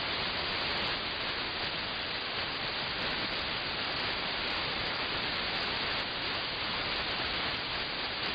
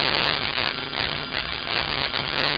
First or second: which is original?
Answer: first